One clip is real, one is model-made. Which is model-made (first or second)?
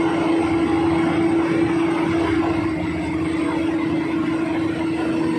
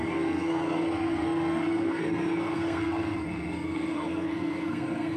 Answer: second